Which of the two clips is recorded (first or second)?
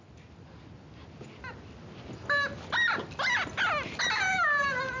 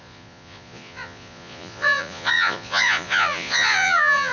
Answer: first